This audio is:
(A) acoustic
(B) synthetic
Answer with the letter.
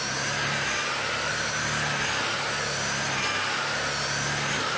A